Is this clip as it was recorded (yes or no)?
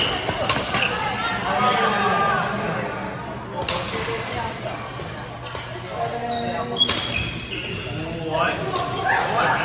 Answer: yes